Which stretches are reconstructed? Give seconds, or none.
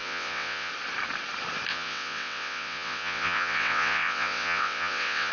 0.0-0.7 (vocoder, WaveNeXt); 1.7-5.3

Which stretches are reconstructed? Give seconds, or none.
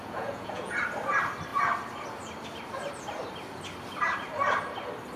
0.0-0.8 (vocoder, Vocos)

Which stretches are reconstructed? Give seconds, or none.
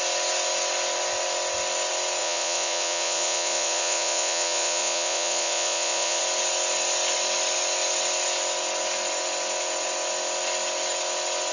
2.2-6.2 (vocoder, Vocos)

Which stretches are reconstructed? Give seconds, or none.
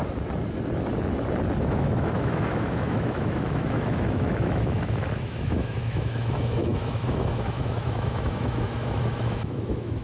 1.6-10.0 (autoencoder, DAC-VAE)